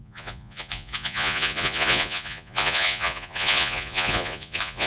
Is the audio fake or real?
fake